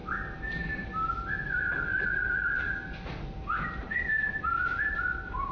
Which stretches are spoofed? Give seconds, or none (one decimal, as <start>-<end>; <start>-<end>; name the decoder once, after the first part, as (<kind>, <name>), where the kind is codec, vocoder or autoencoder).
3.8-5.5 (vocoder, BigVGAN v2)